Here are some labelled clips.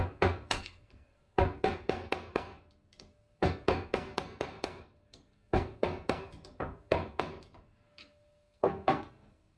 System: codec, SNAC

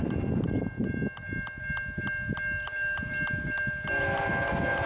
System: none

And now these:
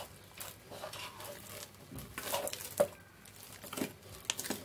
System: none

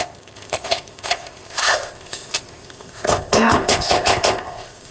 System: codec, ZipCodec